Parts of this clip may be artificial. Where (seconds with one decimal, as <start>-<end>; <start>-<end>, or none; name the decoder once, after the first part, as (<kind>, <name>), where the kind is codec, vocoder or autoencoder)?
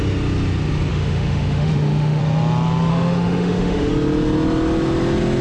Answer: 0.9-2.2 (autoencoder, DAC-VAE); 2.9-3.9